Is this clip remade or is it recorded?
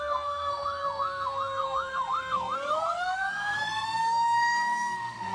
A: remade